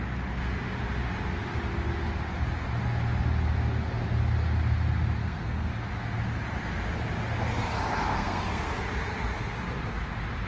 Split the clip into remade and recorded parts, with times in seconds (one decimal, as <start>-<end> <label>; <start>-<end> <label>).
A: 0.0-5.2 recorded; 5.2-5.7 remade; 5.7-8.1 recorded; 8.1-8.7 remade; 8.7-10.5 recorded